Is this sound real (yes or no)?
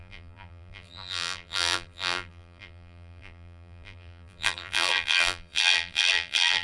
no